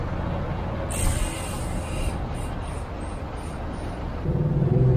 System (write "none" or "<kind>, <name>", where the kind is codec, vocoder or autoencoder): none